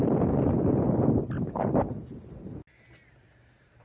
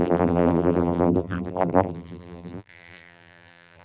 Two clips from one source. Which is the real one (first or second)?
first